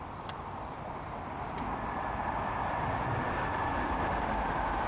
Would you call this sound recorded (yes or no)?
yes